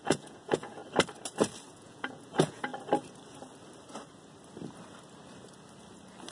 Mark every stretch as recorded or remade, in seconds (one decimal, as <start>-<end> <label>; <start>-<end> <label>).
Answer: 0.0-0.8 remade; 0.8-1.7 recorded; 1.7-2.7 remade; 2.7-6.3 recorded